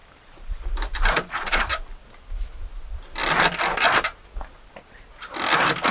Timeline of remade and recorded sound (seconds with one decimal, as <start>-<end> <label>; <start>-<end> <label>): 0.0-1.5 remade; 1.5-5.9 recorded